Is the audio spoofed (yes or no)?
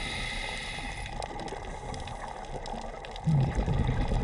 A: no